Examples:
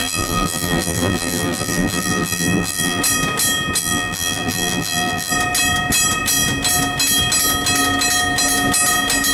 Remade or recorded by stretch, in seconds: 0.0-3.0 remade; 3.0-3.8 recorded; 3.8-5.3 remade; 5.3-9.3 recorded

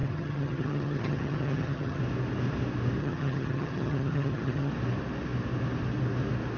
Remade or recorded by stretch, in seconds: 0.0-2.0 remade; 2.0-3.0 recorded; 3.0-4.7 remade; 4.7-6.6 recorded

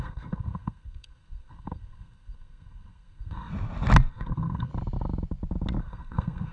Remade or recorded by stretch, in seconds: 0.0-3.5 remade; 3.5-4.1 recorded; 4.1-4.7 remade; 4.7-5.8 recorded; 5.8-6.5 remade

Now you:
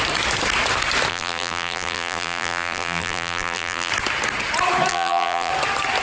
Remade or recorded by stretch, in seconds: 0.0-1.1 recorded; 1.1-3.9 remade; 3.9-4.9 recorded; 4.9-5.5 remade; 5.5-6.0 recorded